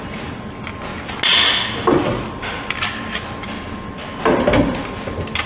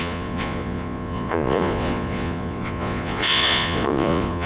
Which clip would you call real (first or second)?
first